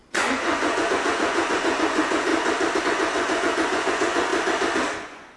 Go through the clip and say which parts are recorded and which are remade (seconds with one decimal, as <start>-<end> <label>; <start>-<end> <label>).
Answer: 0.0-2.3 remade; 2.3-2.8 recorded; 2.8-4.3 remade; 4.3-5.0 recorded; 5.0-5.4 remade

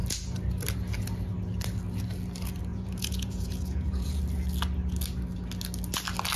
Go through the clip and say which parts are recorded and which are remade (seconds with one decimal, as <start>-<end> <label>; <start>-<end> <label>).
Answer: 0.0-2.7 recorded; 2.7-4.2 remade; 4.2-6.4 recorded

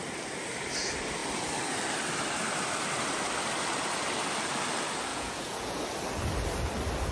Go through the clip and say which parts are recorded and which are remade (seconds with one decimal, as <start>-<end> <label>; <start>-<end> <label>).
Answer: 0.0-5.1 recorded; 5.1-5.8 remade; 5.8-7.1 recorded

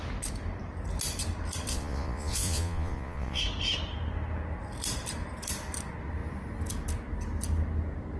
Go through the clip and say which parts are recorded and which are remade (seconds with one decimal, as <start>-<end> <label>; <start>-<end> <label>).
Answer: 0.0-1.7 recorded; 1.7-3.4 remade; 3.4-8.2 recorded